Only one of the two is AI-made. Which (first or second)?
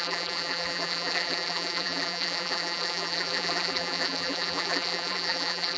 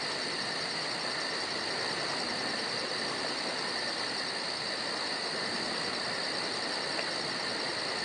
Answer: first